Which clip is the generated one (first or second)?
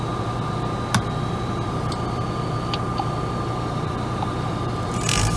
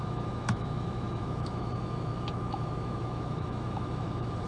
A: second